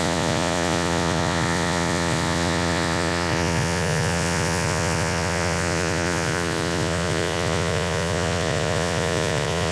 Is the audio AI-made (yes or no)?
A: yes